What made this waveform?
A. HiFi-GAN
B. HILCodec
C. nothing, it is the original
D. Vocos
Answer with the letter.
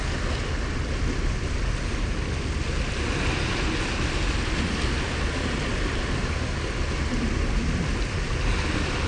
C